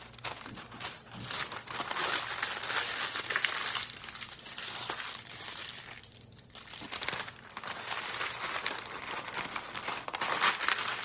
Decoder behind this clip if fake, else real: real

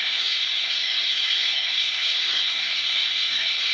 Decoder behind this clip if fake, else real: fake, codec, SNAC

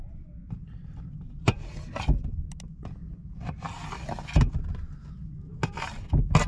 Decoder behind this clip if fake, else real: real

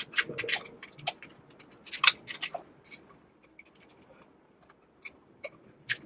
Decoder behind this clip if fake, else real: real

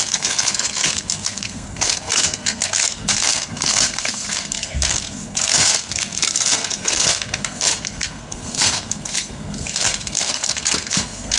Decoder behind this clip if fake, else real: fake, codec, SNAC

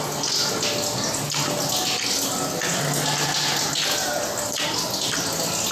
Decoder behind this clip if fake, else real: real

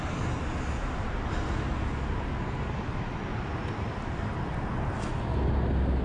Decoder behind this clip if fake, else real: real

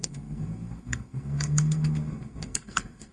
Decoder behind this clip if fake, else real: fake, codec, SNAC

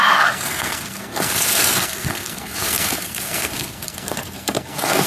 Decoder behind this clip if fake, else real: fake, codec, SNAC